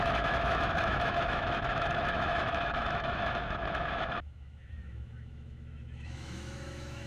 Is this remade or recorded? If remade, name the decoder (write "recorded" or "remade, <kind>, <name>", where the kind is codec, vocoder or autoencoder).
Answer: remade, autoencoder, DAC-VAE